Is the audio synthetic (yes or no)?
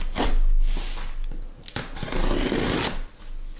no